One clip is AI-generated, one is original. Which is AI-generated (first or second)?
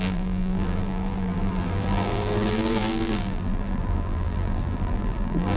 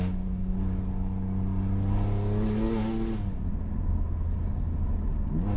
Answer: first